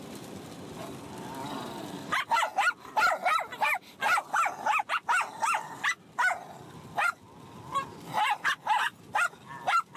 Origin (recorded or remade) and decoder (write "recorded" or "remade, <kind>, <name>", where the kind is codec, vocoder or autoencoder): recorded